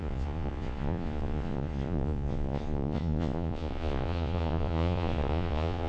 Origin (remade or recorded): remade